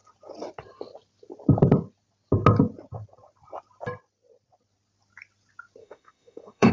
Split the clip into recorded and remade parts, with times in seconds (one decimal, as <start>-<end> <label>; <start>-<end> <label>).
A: 0.0-5.8 recorded; 5.8-6.7 remade